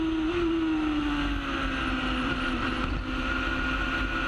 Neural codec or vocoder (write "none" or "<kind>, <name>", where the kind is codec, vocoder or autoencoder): none